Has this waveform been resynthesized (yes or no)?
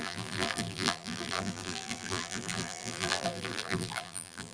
yes